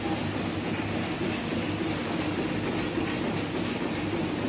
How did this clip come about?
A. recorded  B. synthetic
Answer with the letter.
A